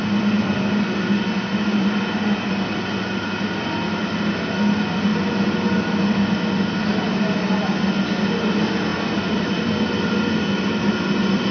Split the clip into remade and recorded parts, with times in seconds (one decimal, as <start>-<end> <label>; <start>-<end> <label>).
0.0-11.5 recorded